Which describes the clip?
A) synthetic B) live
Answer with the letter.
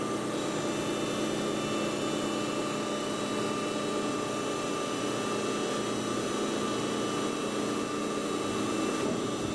B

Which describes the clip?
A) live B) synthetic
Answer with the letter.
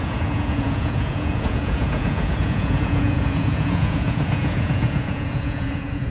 B